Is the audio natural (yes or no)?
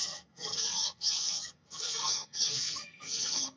no